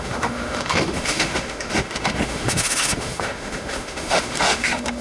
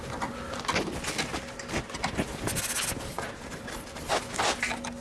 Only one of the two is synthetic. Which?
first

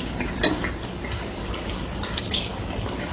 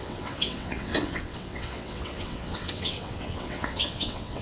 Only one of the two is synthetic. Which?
second